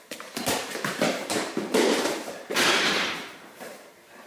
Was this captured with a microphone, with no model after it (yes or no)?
no